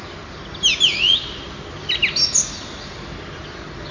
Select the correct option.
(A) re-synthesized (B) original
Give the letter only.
B